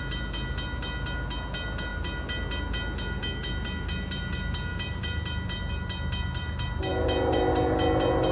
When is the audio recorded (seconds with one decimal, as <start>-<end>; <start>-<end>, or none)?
0.0-8.3